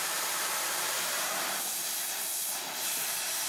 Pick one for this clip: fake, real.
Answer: fake